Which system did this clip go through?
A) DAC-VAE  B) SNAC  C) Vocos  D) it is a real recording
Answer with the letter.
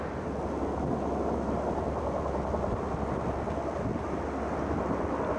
D